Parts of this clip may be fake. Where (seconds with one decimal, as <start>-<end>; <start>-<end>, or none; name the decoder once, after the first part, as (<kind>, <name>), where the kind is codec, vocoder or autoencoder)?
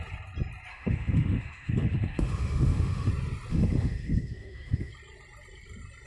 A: 0.7-3.1 (autoencoder, DAC-VAE); 3.5-4.9